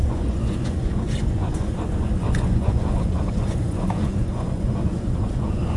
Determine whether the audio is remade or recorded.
remade